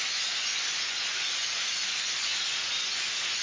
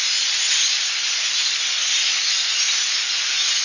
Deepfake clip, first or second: first